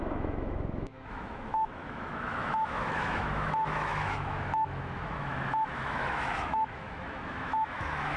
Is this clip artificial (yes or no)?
yes